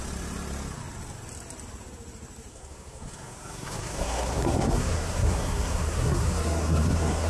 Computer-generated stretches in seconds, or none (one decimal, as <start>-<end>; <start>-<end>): 2.5-7.3